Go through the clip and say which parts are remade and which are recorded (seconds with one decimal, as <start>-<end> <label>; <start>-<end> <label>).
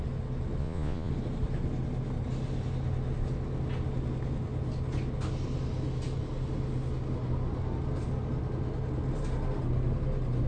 0.0-0.6 recorded; 0.6-1.1 remade; 1.1-10.5 recorded